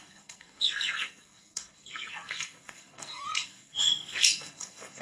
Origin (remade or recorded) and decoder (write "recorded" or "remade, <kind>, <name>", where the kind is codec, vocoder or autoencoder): remade, codec, SNAC